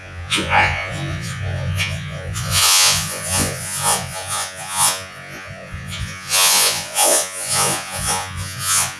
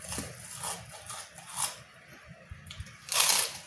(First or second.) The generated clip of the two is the first